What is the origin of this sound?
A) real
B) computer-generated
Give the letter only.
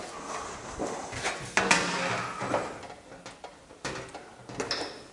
A